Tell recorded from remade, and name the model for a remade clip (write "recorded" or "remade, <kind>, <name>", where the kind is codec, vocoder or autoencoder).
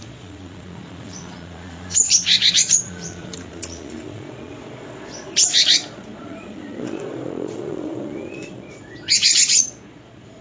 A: remade, vocoder, Vocos